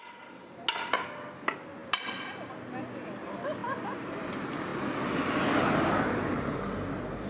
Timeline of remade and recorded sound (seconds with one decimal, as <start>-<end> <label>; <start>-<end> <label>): 0.0-7.3 recorded